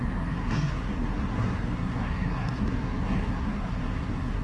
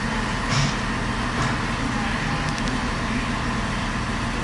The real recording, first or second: second